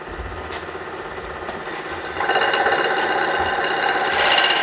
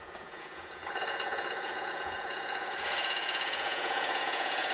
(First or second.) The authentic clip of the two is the first